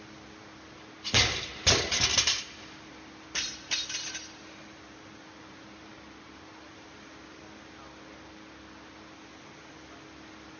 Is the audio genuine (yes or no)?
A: yes